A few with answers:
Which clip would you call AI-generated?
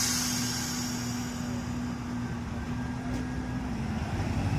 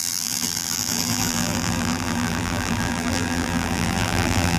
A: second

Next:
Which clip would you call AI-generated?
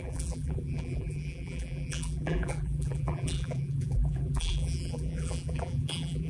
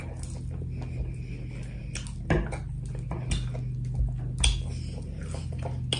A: first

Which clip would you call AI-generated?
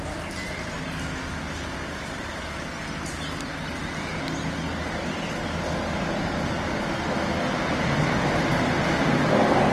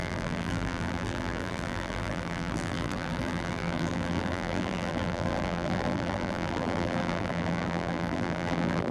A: second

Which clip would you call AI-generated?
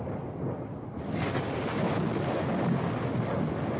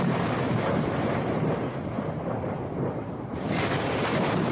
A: second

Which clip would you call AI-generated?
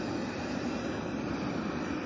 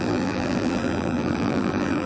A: second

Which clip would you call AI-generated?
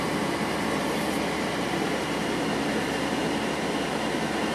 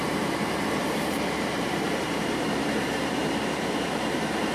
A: second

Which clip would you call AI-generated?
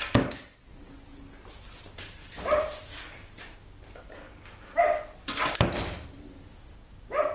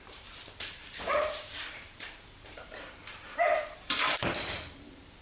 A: second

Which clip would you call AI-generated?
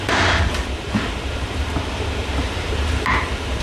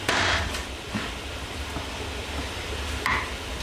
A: first